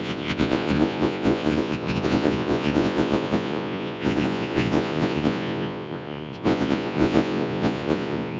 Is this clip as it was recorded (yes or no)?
no